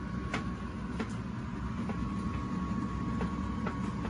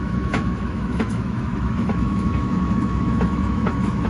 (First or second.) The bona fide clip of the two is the first